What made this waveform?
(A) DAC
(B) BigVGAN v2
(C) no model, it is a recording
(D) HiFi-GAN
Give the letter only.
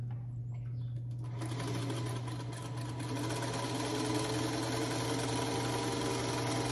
C